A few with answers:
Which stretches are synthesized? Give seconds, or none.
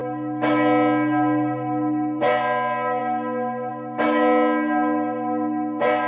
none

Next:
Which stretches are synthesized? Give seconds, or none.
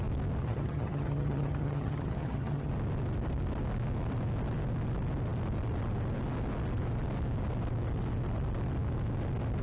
0.4-2.7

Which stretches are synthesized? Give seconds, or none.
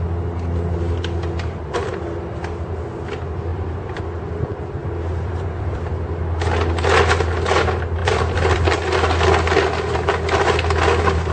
3.5-4.0; 4.8-5.9; 8.0-8.6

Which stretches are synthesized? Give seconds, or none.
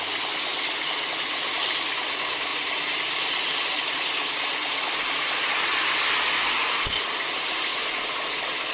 none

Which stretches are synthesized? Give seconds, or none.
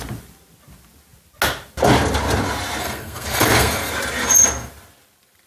2.8-3.9